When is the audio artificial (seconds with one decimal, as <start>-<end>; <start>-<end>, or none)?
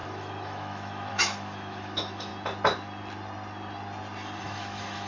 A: 0.0-2.3; 4.4-5.1